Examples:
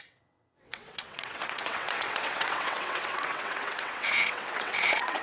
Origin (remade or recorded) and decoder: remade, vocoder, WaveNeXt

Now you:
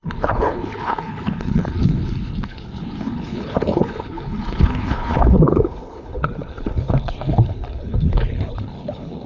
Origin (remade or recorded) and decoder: remade, codec, HILCodec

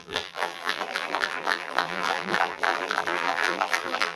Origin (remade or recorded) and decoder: remade, vocoder, BigVGAN v2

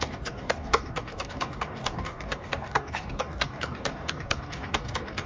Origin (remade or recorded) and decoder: remade, codec, DAC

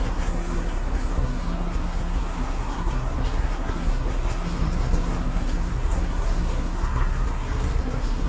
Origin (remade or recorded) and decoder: remade, codec, SNAC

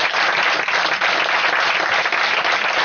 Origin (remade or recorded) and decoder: recorded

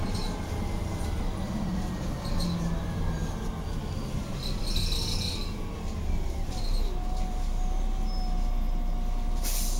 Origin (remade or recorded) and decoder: recorded